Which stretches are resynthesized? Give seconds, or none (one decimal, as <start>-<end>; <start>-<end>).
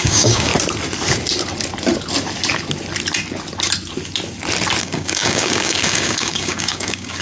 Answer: 0.0-0.5; 4.8-7.2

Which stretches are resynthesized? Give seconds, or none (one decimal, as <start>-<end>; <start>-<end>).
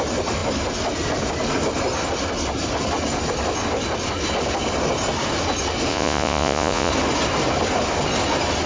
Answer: 5.9-6.9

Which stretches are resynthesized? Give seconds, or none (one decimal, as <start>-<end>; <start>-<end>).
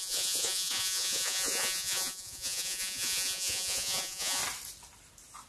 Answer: 0.0-4.4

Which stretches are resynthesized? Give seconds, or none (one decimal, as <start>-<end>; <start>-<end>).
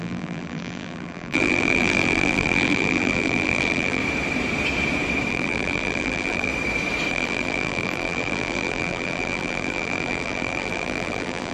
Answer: 0.0-4.0; 5.3-6.5; 7.1-11.5